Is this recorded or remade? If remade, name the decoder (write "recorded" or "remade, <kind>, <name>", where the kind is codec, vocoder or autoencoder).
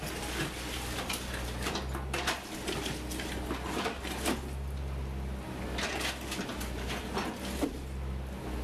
recorded